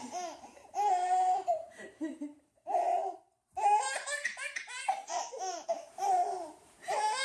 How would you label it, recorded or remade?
remade